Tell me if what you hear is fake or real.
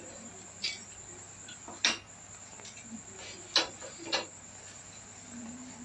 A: real